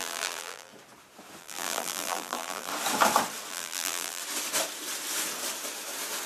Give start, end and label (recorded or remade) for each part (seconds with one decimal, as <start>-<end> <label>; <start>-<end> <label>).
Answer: 0.0-0.7 remade; 0.7-1.4 recorded; 1.4-2.7 remade; 2.7-3.5 recorded; 3.5-4.2 remade; 4.2-6.3 recorded